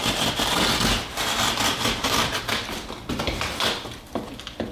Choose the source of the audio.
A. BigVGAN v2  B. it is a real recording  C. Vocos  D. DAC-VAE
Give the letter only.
B